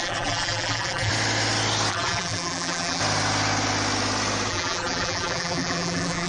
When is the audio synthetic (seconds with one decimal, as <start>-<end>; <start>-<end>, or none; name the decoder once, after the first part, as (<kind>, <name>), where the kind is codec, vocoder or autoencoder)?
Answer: 0.0-1.1 (vocoder, BigVGAN v2); 1.9-3.0; 4.5-6.3